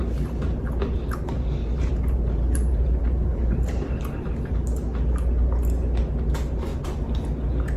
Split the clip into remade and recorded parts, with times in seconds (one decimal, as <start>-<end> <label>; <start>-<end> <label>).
0.0-1.6 recorded; 1.6-4.0 remade; 4.0-7.8 recorded